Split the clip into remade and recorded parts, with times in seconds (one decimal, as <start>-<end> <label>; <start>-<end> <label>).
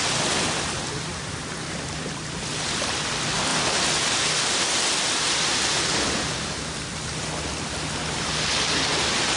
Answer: 0.0-9.4 recorded